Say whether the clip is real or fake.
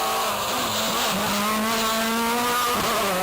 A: real